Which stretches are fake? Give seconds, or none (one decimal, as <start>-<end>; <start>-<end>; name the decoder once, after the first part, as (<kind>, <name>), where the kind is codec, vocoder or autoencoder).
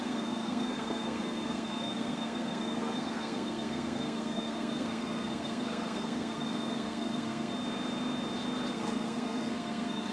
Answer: 0.0-7.5 (codec, SNAC); 8.7-10.1